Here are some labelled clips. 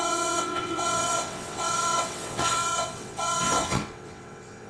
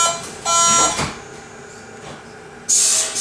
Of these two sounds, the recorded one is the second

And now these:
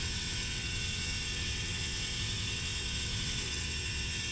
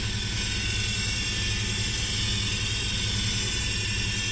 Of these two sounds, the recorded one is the second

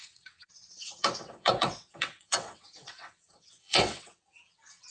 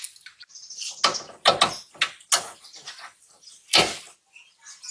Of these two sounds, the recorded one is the second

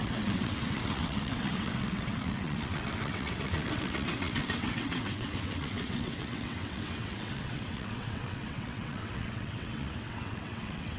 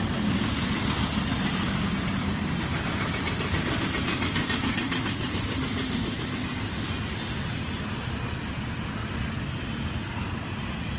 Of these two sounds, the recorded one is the second